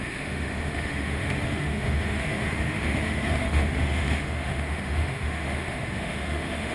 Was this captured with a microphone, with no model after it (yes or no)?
no